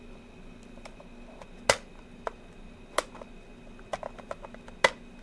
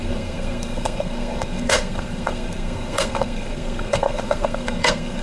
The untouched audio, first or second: first